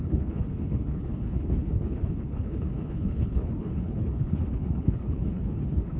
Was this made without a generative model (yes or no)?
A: no